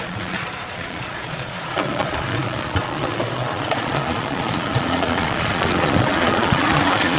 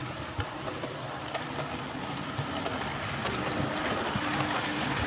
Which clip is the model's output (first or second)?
first